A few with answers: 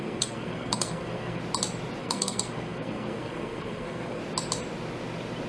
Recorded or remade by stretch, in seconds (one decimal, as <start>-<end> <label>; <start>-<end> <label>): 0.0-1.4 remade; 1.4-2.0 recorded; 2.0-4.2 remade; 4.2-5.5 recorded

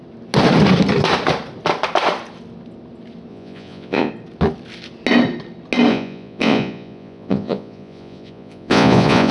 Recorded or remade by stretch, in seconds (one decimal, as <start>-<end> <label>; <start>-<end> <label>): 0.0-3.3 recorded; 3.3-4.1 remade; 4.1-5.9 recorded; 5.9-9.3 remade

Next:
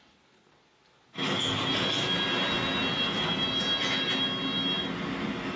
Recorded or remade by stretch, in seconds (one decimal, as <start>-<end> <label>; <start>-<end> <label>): 0.0-5.6 recorded

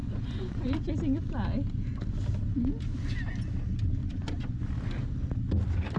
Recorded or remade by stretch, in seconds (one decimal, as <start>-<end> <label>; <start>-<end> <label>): 0.0-0.9 remade; 0.9-4.0 recorded; 4.0-4.6 remade; 4.6-6.0 recorded